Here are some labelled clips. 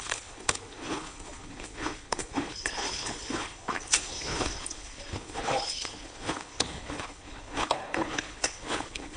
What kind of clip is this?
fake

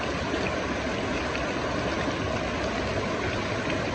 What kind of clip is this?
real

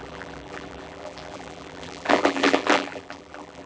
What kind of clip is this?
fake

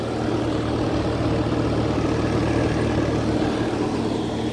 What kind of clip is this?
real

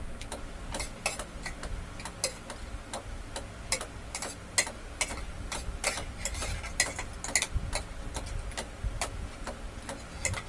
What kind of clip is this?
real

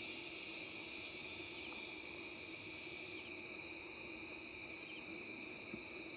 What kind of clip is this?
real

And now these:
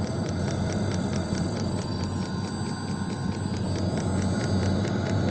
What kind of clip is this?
real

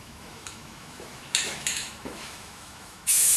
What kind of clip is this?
fake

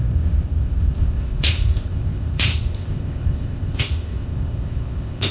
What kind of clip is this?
fake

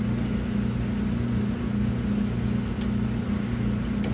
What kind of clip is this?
real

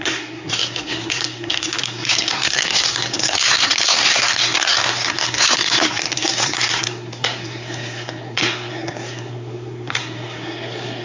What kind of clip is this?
fake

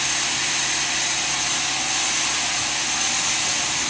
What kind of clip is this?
real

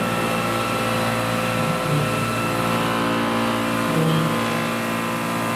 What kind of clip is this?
real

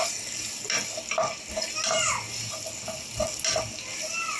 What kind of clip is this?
real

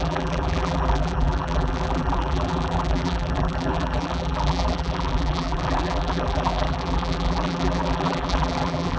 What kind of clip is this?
fake